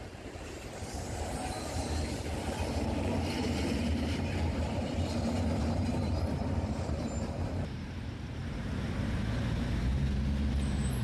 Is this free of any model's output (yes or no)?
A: no